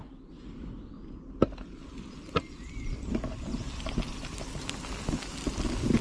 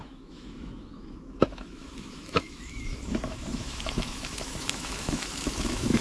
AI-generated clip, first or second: second